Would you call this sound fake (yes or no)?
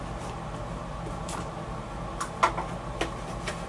no